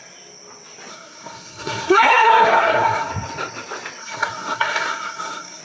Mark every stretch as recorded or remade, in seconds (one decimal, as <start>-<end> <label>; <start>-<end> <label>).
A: 0.0-0.9 recorded; 0.9-3.1 remade; 3.1-4.0 recorded; 4.0-5.6 remade